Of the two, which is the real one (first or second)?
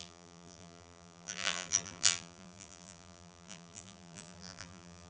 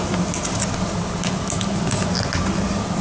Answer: second